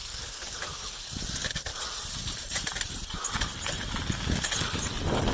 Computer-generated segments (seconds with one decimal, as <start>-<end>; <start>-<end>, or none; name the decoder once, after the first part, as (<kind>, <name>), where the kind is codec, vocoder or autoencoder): 0.0-0.9 (vocoder, BigVGAN v2); 1.7-4.0